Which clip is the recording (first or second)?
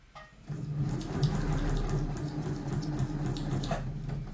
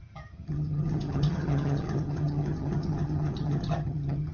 first